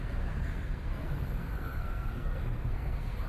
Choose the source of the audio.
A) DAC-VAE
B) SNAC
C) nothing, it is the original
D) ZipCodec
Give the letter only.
B